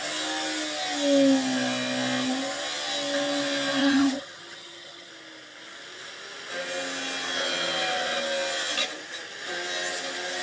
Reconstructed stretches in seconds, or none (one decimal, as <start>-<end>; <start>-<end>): 3.8-5.1